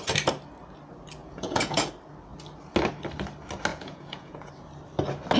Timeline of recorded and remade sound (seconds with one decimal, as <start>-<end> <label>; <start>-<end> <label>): 0.0-1.2 recorded; 1.2-1.9 remade; 1.9-3.7 recorded; 3.7-4.5 remade; 4.5-5.4 recorded

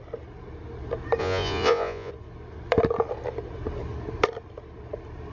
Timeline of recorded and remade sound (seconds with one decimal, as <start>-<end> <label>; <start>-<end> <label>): 0.0-1.2 recorded; 1.2-2.1 remade; 2.1-5.3 recorded

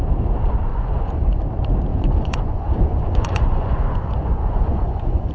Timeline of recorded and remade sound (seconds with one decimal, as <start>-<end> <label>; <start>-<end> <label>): 0.0-0.7 recorded; 0.7-1.4 remade; 1.4-1.9 recorded; 1.9-5.3 remade

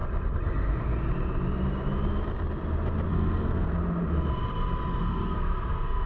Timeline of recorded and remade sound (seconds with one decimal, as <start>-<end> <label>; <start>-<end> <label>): 0.0-3.1 recorded; 3.1-3.7 remade; 3.7-5.0 recorded; 5.0-6.1 remade

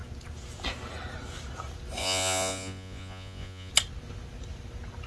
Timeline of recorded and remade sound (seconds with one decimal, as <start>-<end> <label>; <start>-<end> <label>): 0.0-2.0 recorded; 2.0-3.7 remade; 3.7-5.1 recorded